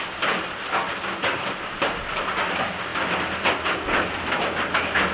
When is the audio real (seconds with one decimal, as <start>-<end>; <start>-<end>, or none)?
0.0-5.1